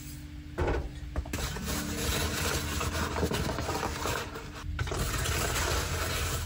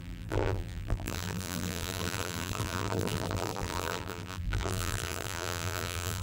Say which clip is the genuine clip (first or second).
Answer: first